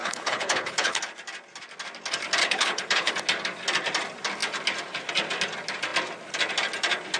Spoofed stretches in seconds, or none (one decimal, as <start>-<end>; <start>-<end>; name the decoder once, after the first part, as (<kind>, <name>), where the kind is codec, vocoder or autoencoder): 0.0-1.0 (codec, HILCodec); 2.4-3.1